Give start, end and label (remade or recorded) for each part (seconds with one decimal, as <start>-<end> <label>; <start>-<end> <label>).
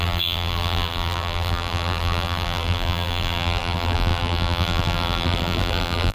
0.0-6.1 remade